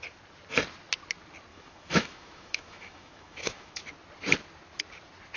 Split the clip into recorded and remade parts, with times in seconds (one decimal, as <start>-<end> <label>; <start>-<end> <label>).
0.0-1.5 recorded; 1.5-3.8 remade; 3.8-5.4 recorded